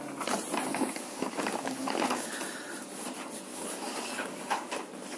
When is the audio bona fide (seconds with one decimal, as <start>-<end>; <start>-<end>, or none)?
0.0-0.7; 2.3-3.5; 4.7-5.2